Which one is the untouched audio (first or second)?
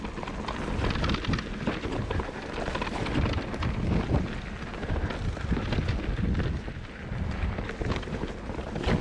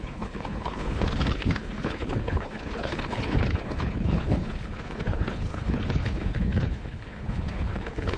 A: first